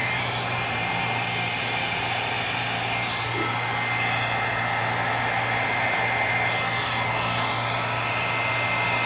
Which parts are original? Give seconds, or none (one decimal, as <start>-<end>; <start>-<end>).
0.9-9.1